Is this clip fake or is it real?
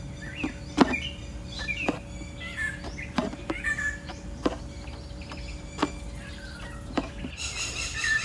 real